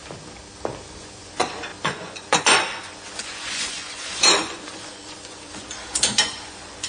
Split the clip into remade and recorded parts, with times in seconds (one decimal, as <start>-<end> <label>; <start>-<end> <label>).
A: 0.0-0.9 recorded; 0.9-6.9 remade